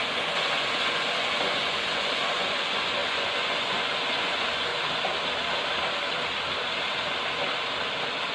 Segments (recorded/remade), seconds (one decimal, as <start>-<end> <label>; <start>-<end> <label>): 0.0-4.7 remade; 4.7-8.3 recorded